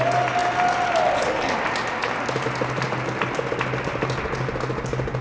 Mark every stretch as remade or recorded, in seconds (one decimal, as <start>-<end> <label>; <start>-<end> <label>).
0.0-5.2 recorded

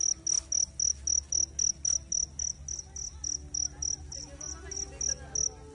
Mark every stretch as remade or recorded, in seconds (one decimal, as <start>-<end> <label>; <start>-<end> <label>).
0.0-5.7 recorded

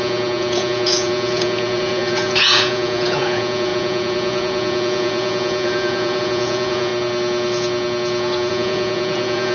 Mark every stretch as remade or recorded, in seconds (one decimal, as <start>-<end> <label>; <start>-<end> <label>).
0.0-6.9 remade; 6.9-8.5 recorded; 8.5-9.5 remade

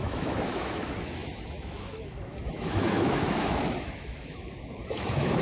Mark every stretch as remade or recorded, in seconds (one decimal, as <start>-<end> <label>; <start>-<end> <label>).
0.0-5.4 remade